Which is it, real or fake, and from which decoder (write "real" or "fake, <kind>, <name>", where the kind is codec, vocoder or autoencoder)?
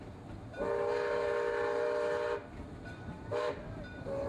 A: real